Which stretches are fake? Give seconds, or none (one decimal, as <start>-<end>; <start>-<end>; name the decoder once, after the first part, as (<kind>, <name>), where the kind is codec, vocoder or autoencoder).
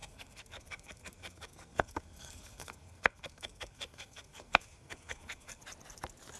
0.0-5.6 (codec, SNAC)